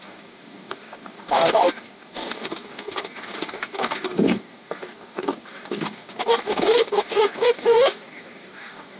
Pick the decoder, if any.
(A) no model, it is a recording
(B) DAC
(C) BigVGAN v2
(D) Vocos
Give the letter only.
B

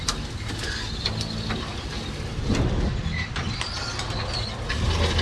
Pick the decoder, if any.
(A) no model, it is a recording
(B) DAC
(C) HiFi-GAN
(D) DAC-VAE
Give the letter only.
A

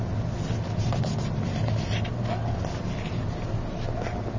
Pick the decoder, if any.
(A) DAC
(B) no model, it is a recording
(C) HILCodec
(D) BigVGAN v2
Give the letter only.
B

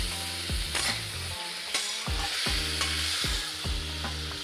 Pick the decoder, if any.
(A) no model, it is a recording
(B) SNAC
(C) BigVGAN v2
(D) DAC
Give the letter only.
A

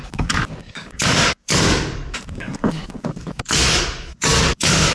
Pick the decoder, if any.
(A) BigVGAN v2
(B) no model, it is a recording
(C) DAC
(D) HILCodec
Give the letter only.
C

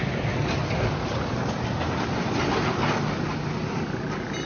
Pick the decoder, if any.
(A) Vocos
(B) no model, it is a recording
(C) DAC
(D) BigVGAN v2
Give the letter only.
B